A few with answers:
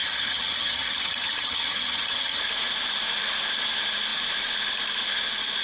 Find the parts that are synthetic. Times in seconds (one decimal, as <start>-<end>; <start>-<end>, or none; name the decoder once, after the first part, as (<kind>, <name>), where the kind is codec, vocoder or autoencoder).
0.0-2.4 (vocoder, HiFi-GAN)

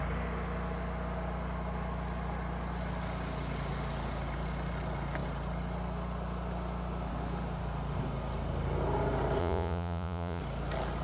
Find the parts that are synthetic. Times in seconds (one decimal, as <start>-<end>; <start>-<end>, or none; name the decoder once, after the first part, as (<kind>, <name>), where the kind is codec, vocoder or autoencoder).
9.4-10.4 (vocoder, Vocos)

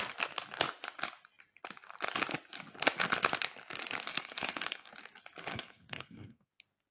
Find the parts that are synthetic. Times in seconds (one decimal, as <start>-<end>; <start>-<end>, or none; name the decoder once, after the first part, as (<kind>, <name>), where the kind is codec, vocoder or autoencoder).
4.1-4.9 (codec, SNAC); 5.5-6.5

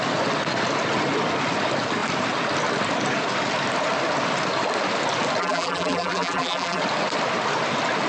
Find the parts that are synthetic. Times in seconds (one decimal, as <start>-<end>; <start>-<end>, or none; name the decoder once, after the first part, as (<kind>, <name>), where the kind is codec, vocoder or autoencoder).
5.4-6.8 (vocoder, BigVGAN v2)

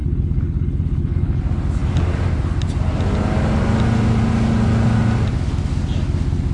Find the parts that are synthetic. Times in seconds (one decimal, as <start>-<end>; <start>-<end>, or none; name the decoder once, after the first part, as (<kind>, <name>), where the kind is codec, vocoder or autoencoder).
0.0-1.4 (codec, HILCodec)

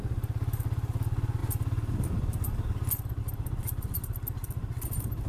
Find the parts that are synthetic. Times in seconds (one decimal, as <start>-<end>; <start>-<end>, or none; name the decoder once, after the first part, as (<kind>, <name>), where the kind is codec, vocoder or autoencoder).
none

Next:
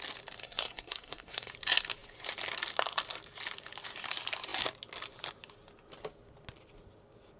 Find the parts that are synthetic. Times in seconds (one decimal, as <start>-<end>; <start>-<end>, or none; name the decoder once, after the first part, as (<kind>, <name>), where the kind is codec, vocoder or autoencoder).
0.4-1.5 (codec, SNAC)